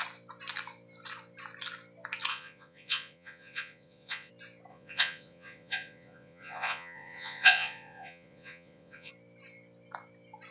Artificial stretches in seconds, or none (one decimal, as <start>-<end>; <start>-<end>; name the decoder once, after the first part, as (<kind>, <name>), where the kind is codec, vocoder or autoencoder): 2.3-4.3 (vocoder, Vocos); 4.7-9.1